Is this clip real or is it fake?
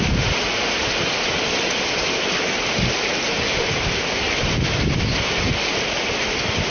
real